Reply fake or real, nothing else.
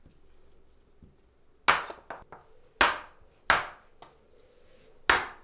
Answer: real